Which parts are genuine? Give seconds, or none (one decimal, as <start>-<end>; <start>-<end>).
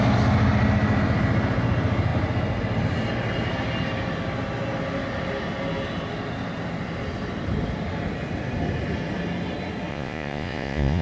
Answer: 0.0-9.9